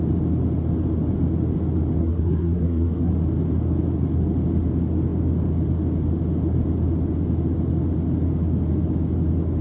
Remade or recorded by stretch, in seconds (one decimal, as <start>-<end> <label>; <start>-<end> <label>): 0.0-2.0 recorded; 2.0-3.1 remade; 3.1-9.6 recorded